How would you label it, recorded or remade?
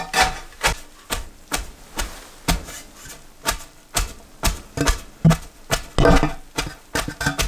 recorded